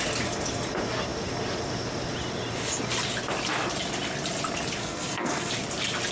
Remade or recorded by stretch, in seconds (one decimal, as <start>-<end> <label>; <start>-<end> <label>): 0.0-4.8 recorded; 4.8-5.5 remade; 5.5-6.1 recorded